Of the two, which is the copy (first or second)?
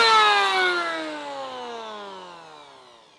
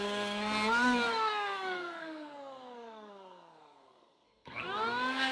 second